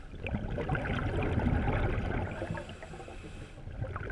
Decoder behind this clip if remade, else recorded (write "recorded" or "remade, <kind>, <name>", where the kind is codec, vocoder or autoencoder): recorded